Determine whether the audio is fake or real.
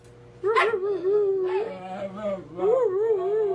real